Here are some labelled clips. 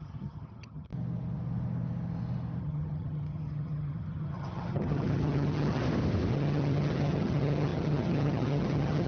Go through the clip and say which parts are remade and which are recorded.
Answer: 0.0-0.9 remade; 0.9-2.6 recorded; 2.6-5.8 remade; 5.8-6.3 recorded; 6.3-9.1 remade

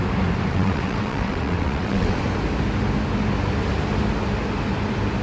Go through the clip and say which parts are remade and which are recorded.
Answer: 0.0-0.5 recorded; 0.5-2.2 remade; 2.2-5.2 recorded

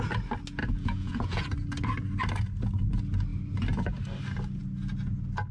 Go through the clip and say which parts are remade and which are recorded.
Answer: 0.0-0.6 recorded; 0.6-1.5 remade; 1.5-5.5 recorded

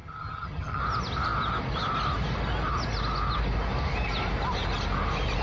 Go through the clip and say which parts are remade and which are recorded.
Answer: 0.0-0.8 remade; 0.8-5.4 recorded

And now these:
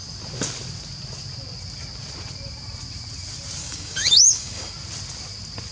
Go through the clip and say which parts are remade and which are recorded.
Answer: 0.0-3.6 recorded; 3.6-4.7 remade; 4.7-5.7 recorded